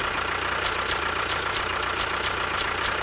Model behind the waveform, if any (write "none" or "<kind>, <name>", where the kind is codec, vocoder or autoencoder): vocoder, BigVGAN v2